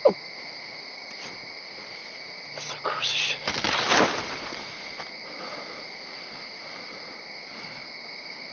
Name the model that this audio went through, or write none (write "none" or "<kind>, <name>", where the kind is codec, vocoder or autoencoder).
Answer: none